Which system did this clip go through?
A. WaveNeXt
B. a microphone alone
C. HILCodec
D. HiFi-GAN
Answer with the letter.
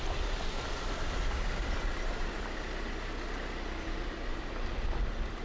B